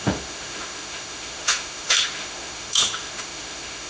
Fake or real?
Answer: fake